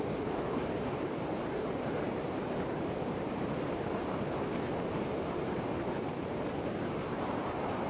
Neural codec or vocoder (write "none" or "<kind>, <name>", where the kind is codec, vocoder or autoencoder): vocoder, BigVGAN v2